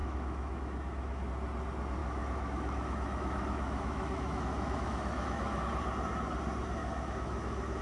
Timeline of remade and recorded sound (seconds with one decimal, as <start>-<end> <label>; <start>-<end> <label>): 0.0-1.3 remade; 1.3-2.0 recorded; 2.0-5.6 remade; 5.6-6.8 recorded; 6.8-7.8 remade